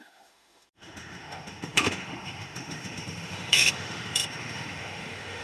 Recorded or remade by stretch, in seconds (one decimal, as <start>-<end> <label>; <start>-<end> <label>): 0.0-5.4 remade